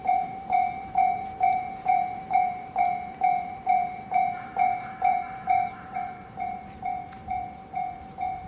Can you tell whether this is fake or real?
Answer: fake